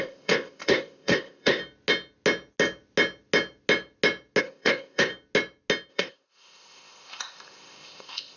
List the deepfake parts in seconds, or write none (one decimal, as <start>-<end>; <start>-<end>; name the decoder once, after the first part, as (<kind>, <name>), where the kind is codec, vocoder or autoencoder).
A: 0.0-1.6 (codec, ZipCodec); 4.4-5.1; 5.9-8.4